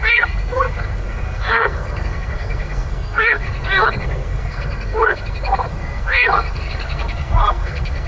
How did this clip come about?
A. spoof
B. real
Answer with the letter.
A